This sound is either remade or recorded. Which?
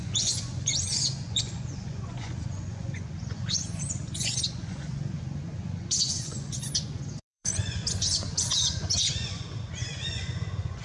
remade